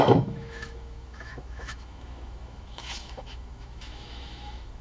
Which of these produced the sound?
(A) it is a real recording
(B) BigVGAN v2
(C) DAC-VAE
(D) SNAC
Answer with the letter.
C